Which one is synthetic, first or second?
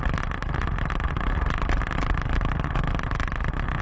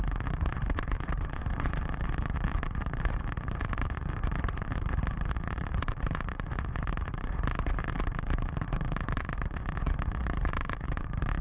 second